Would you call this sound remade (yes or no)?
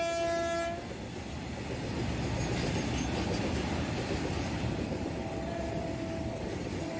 no